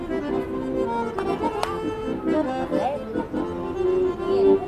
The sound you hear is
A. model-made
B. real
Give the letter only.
B